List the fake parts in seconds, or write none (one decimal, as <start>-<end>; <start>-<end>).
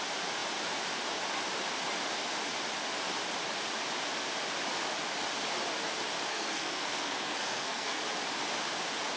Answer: 6.3-8.0